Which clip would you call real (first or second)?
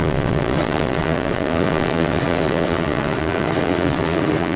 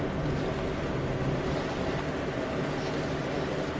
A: second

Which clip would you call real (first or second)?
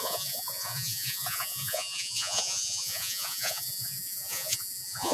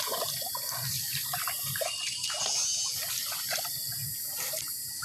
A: second